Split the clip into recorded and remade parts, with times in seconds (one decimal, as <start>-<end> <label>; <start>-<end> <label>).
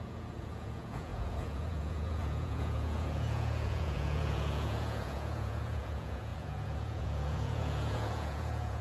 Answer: 0.0-8.8 remade